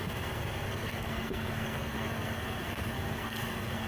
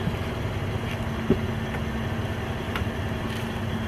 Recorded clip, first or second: second